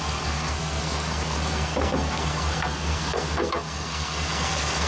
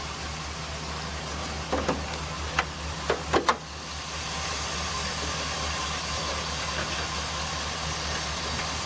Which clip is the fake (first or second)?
first